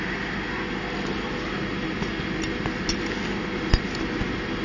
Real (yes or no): yes